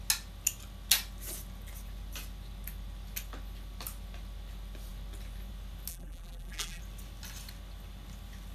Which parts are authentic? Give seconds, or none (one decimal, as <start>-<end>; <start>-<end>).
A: 0.0-5.9; 6.8-8.5